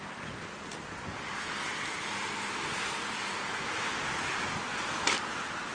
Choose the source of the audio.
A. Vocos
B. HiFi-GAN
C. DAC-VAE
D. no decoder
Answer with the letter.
D